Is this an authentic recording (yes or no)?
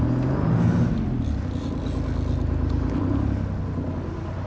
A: yes